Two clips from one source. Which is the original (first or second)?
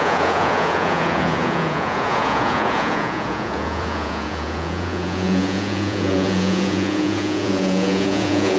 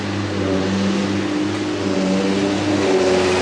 second